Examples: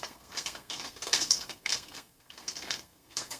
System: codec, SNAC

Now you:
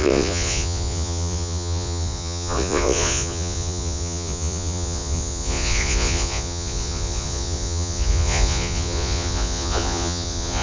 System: vocoder, Vocos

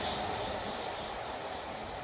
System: none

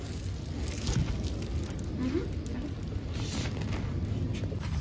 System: none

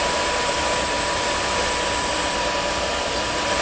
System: vocoder, BigVGAN v2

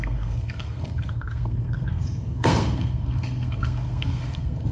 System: codec, SNAC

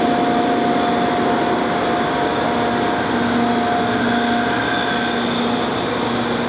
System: none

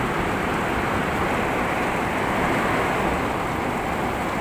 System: vocoder, BigVGAN v2